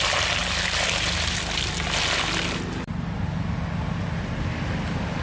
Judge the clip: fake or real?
real